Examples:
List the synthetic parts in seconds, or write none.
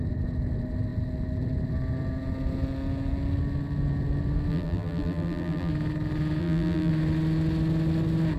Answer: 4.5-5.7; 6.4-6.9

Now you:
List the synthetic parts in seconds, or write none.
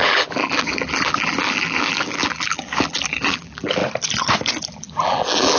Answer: 0.0-3.8; 4.6-5.6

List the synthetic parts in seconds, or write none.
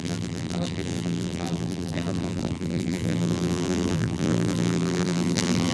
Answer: 0.0-5.7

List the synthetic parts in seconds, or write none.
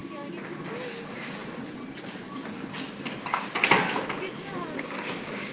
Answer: 0.6-1.4; 4.3-5.5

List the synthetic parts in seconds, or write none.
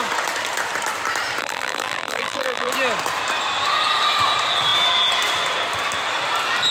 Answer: 1.4-2.7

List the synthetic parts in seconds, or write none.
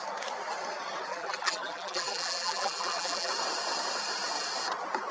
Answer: 1.1-3.3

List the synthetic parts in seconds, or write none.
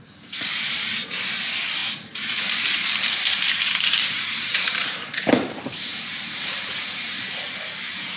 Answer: 0.0-8.2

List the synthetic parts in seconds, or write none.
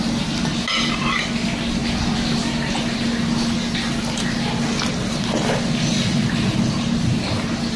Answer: none